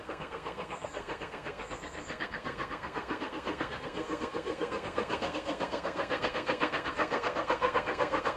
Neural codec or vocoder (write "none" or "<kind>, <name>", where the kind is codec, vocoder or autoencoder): codec, SNAC